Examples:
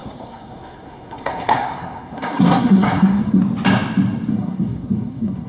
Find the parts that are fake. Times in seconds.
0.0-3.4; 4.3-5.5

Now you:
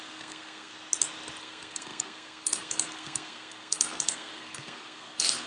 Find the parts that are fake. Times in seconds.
0.0-0.7; 1.4-5.5

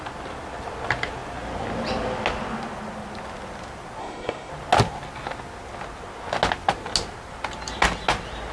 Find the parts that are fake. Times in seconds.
4.0-4.5

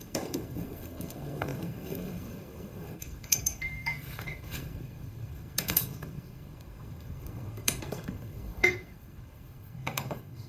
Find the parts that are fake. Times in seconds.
0.0-10.5

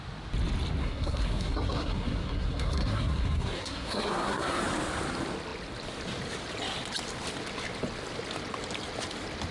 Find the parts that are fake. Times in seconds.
0.8-4.6

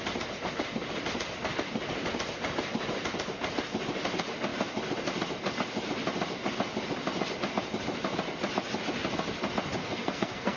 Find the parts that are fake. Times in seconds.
9.8-10.6

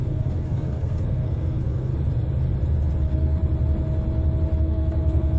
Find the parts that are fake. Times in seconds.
0.0-1.9; 3.0-3.4; 4.6-5.4